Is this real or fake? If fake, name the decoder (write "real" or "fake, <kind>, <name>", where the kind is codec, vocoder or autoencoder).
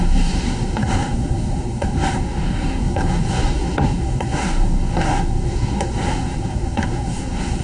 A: fake, codec, SNAC